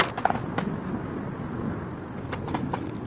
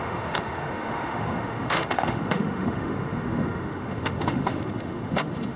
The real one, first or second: first